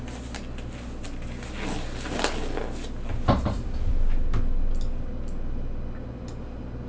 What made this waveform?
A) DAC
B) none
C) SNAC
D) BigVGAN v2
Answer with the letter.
B